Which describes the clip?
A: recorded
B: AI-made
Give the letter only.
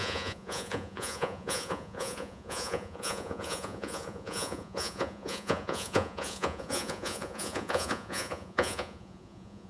B